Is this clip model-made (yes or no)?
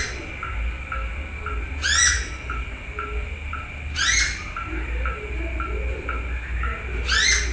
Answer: no